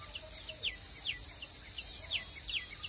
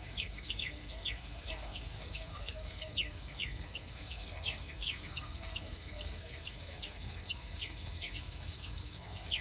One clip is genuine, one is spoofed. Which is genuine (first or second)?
first